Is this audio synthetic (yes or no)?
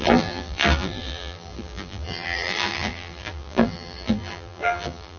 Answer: yes